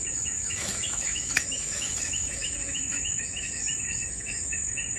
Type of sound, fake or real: fake